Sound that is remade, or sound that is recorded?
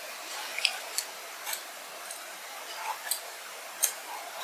recorded